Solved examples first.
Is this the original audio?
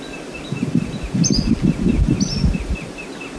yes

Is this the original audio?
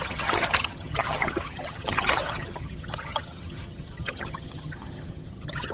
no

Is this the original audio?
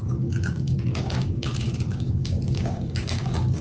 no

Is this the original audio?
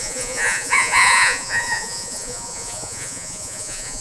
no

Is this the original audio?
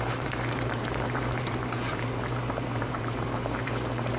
no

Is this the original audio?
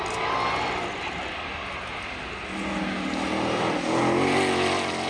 yes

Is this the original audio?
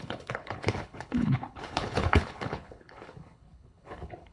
no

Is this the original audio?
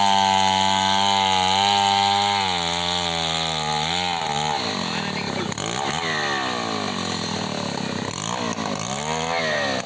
yes